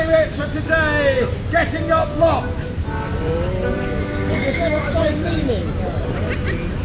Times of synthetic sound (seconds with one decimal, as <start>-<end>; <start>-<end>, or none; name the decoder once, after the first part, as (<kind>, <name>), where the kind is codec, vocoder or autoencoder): 0.0-0.4 (autoencoder, DAC-VAE); 4.4-5.6